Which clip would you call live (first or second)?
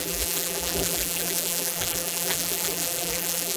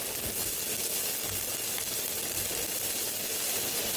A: second